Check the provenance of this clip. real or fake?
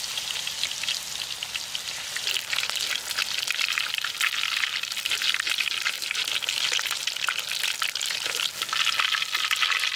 real